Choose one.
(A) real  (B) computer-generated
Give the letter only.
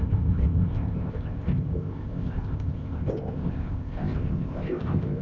B